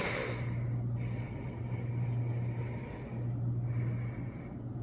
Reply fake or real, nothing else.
real